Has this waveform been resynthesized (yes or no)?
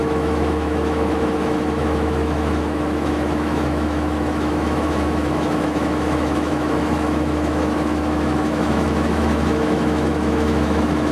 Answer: yes